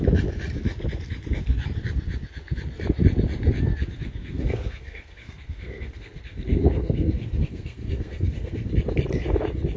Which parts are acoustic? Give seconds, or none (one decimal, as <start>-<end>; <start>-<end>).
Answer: 0.0-4.2; 8.7-9.8